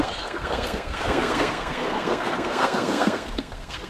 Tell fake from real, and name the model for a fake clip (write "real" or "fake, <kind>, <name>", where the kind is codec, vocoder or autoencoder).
fake, codec, SNAC